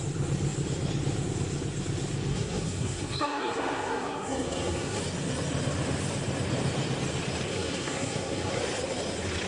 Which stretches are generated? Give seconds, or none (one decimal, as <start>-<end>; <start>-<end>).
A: 2.3-5.0; 7.5-8.6